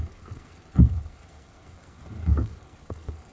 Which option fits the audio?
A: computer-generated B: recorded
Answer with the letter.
A